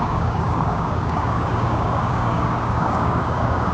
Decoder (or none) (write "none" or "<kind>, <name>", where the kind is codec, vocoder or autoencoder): codec, DAC